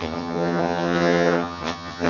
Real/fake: fake